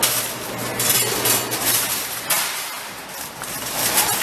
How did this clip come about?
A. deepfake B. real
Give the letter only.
B